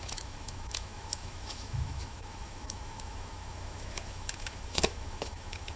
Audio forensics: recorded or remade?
remade